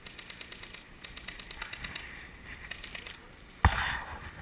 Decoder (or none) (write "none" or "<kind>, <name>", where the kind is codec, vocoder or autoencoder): none